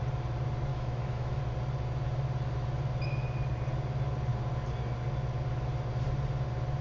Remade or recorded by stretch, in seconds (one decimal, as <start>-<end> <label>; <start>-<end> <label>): 0.0-0.7 recorded; 0.7-1.4 remade; 1.4-6.8 recorded